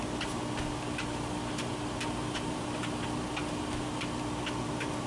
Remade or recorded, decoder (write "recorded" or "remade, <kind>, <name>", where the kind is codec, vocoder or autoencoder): recorded